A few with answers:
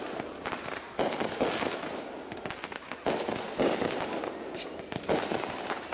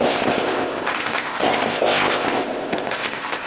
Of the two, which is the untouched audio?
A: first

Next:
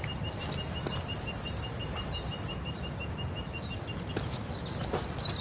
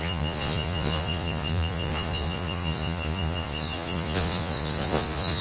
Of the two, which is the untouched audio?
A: first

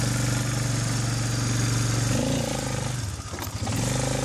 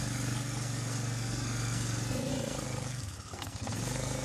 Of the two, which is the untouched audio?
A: first